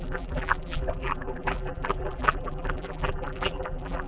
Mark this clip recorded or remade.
remade